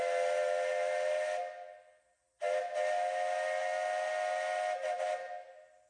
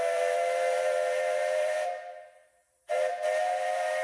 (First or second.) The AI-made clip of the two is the second